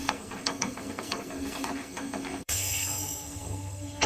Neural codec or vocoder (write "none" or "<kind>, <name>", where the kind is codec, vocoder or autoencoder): codec, SNAC